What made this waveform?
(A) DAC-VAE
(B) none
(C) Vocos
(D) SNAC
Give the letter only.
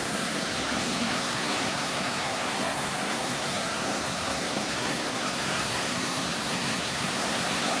D